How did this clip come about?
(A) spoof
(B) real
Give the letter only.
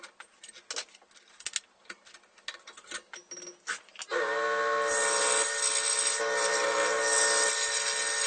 B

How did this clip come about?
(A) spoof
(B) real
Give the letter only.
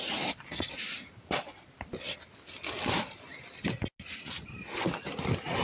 B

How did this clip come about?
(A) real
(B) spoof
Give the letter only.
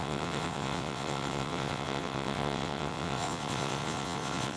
B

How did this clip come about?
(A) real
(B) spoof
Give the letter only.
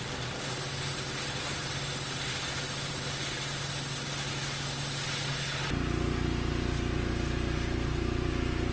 A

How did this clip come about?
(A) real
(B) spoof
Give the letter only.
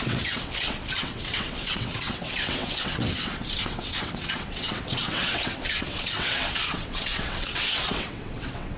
B